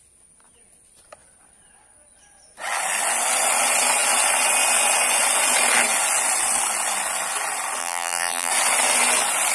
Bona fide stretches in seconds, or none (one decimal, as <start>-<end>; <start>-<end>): 0.0-7.8; 8.5-9.5